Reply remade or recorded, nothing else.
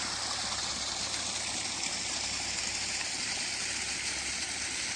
recorded